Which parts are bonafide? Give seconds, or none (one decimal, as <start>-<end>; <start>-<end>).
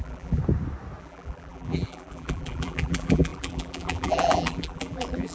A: 0.4-1.0